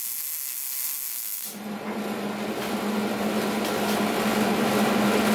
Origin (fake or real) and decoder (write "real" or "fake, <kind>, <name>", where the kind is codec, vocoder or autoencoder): real